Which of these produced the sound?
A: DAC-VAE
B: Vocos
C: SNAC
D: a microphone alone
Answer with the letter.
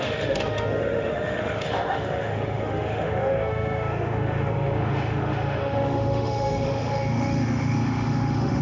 A